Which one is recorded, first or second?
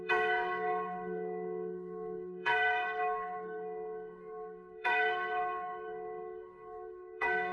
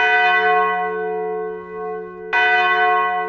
second